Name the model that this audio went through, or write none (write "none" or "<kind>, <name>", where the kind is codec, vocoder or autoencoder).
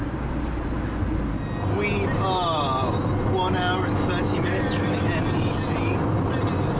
none